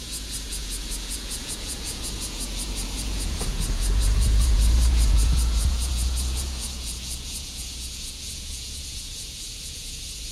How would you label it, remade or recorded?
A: remade